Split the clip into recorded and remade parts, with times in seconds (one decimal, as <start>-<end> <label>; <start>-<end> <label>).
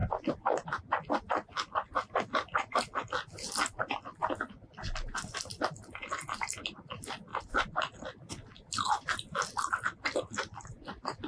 0.0-11.3 recorded